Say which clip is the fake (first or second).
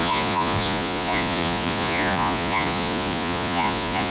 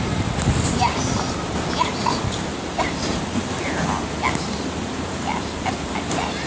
first